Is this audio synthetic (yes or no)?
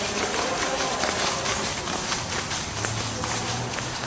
no